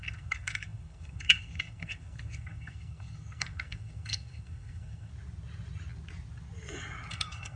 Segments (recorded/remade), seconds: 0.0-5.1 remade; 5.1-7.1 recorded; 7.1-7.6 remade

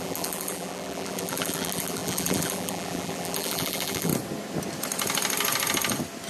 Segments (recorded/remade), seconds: 0.0-4.1 remade; 4.1-6.3 recorded

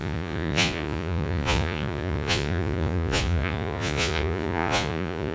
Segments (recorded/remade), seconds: 0.0-5.3 remade

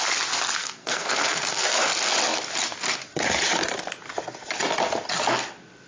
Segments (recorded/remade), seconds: 0.0-0.6 recorded; 0.6-1.8 remade; 1.8-5.9 recorded

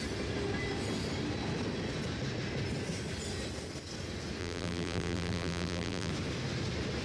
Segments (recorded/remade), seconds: 0.0-4.4 recorded; 4.4-6.1 remade; 6.1-7.0 recorded

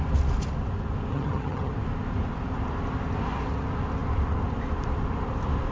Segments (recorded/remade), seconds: 0.0-1.1 recorded; 1.1-1.7 remade; 1.7-5.7 recorded

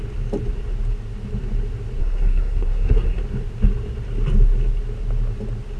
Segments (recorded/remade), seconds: 0.0-2.0 recorded; 2.0-3.2 remade; 3.2-5.8 recorded